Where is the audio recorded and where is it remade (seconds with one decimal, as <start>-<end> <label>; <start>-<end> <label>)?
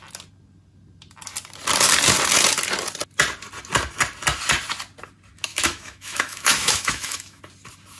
0.0-5.5 recorded; 5.5-7.4 remade; 7.4-8.0 recorded